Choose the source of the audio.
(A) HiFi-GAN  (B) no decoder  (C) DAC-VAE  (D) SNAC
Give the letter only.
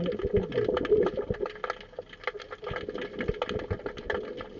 B